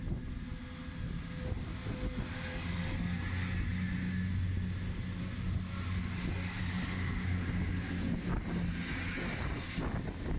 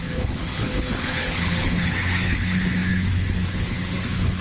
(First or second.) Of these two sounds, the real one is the first